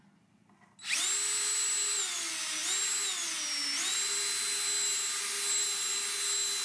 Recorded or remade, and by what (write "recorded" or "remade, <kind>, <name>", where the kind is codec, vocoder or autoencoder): recorded